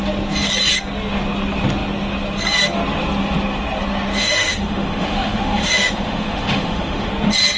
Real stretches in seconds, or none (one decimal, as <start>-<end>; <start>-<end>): 0.0-4.2; 7.1-7.6